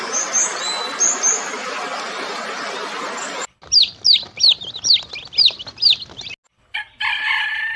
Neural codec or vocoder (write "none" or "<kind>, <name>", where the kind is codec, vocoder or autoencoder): none